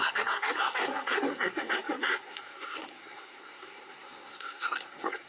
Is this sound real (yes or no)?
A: no